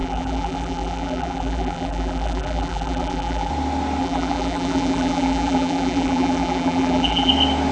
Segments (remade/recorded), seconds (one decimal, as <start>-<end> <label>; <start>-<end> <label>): 0.0-3.5 remade; 3.5-4.0 recorded; 4.0-7.3 remade; 7.3-7.7 recorded